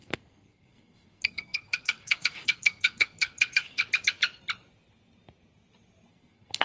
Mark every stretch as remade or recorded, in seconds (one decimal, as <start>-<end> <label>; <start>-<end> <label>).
0.0-3.8 remade; 3.8-6.1 recorded; 6.1-6.6 remade